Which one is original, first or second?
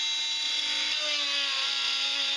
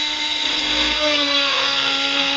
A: first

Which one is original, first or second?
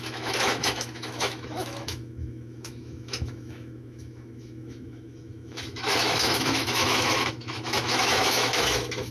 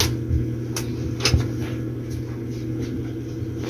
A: second